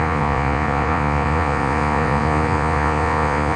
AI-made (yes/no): yes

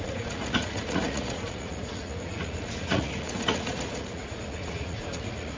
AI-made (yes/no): yes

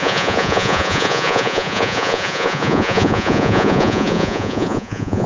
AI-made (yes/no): yes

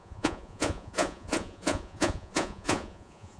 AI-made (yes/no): yes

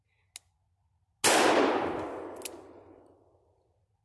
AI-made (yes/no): no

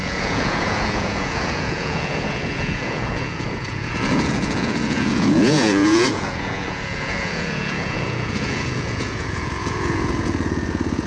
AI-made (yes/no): yes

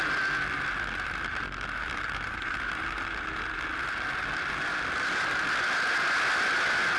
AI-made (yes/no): no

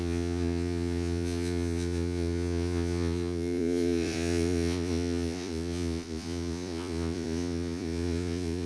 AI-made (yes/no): yes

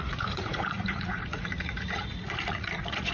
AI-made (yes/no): yes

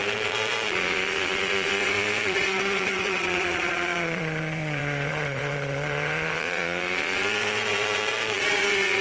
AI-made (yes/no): yes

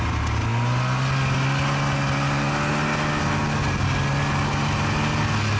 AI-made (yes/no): no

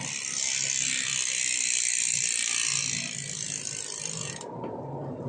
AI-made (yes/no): no